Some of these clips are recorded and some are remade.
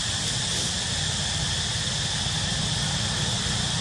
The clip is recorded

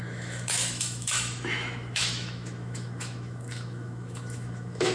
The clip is remade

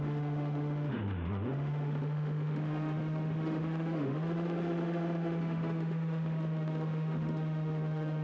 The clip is remade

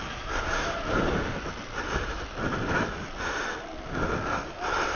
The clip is recorded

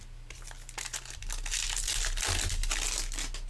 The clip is recorded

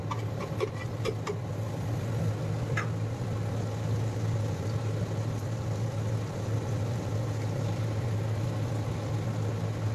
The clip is recorded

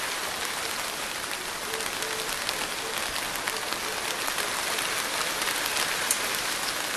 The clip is recorded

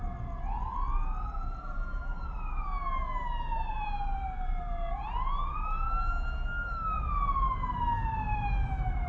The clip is recorded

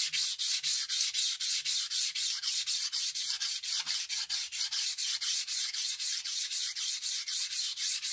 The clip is recorded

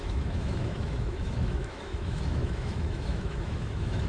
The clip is remade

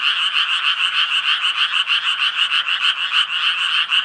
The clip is recorded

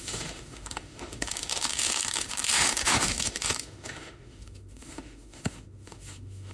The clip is remade